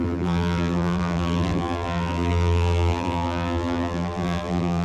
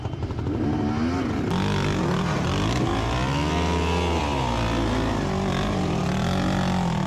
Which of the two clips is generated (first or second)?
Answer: first